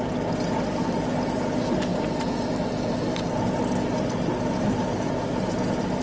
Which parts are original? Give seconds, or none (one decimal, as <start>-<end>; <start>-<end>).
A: 0.0-6.0